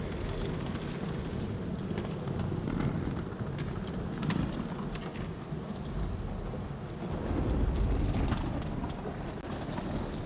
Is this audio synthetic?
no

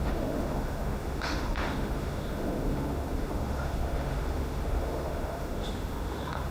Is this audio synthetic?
yes